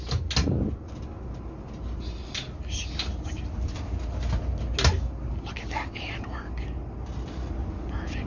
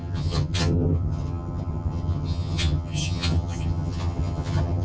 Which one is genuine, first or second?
first